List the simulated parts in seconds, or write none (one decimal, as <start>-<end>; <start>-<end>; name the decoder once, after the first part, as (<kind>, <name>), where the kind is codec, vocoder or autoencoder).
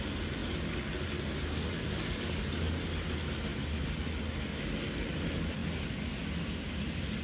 none